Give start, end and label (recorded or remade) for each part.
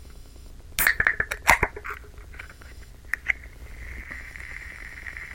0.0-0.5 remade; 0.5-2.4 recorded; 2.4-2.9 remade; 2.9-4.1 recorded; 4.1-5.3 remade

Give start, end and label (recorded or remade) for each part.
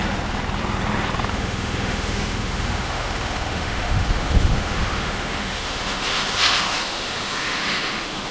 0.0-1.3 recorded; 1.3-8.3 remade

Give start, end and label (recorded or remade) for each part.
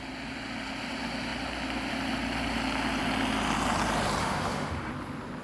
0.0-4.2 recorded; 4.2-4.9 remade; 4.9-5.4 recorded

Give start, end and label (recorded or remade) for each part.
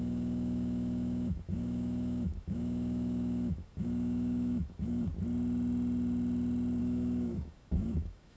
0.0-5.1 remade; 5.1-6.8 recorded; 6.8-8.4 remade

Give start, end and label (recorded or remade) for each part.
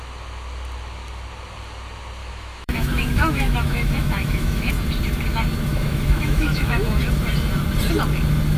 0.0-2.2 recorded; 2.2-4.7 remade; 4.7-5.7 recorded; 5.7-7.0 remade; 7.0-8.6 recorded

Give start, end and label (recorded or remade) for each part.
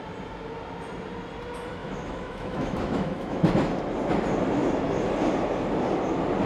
0.0-1.8 recorded; 1.8-3.5 remade; 3.5-6.5 recorded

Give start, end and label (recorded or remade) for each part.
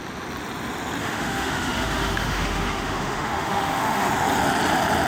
0.0-1.0 recorded; 1.0-4.1 remade; 4.1-5.1 recorded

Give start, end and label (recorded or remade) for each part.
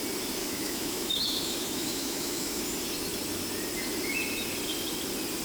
0.0-0.4 recorded; 0.4-2.6 remade; 2.6-5.4 recorded